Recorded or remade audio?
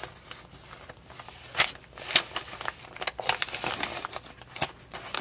recorded